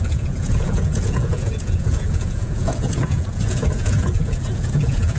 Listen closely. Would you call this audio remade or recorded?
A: remade